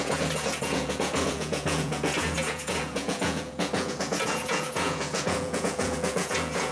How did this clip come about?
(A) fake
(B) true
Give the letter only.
A